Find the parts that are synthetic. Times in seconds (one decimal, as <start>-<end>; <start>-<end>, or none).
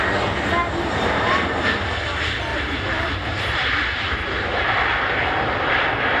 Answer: 2.5-3.7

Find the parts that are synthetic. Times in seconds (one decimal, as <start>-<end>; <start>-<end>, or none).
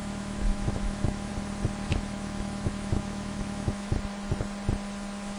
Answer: 0.0-1.3; 1.9-3.9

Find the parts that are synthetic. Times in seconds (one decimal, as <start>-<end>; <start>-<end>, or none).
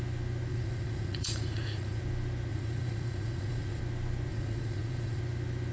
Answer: 0.5-2.0; 2.5-3.8; 4.3-5.2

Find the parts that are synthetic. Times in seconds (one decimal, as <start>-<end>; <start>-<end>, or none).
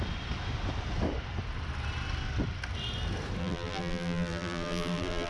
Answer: 3.4-5.3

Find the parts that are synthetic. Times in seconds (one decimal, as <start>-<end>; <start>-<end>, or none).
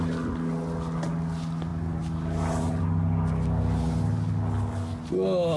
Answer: none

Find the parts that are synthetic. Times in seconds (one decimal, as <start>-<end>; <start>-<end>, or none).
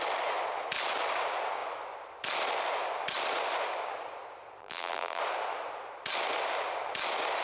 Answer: 4.6-5.2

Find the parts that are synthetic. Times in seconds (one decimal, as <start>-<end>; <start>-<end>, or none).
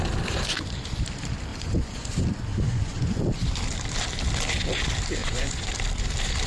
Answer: 1.5-2.1; 2.5-3.2; 5.2-5.7